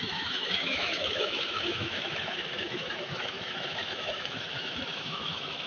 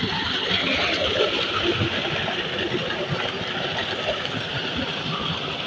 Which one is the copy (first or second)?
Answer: first